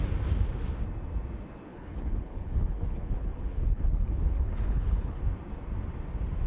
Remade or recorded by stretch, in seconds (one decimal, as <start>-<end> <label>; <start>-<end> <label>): 0.0-1.7 recorded; 1.7-5.2 remade; 5.2-6.5 recorded

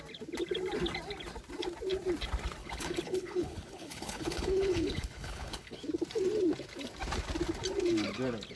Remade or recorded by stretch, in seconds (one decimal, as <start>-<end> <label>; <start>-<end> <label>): 0.0-2.6 recorded; 2.6-5.8 remade; 5.8-8.6 recorded

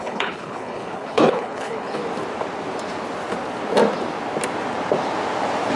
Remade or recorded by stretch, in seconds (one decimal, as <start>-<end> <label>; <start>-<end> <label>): 0.0-2.0 remade; 2.0-5.8 recorded

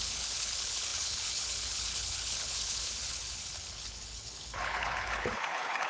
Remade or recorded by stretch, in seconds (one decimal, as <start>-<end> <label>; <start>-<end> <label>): 0.0-5.9 remade

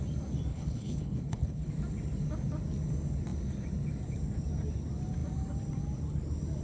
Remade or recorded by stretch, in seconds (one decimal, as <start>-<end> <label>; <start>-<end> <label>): 0.0-0.5 recorded; 0.5-1.7 remade; 1.7-6.6 recorded

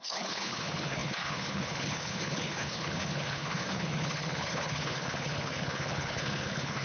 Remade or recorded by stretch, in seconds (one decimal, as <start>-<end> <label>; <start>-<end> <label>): 0.0-6.8 remade